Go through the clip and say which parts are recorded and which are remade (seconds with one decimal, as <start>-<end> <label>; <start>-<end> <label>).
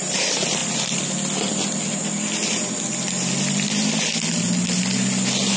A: 0.0-5.6 recorded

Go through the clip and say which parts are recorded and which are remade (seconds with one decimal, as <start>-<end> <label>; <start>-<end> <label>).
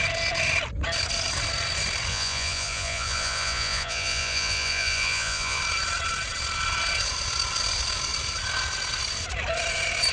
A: 0.0-2.1 recorded; 2.1-5.6 remade; 5.6-10.1 recorded